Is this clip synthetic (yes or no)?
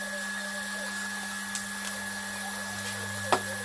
no